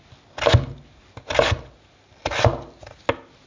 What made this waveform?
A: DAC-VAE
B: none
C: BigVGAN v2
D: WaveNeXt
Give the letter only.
B